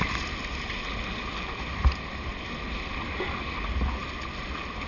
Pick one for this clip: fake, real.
real